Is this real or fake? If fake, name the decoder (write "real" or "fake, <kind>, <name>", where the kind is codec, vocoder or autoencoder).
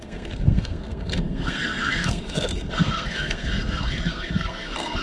fake, codec, SNAC